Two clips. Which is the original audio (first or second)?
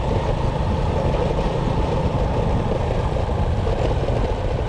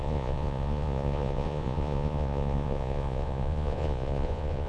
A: first